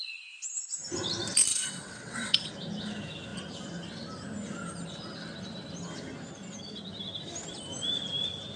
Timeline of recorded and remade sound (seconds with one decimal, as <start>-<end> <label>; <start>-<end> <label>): 0.0-1.5 recorded; 1.5-2.5 remade; 2.5-8.6 recorded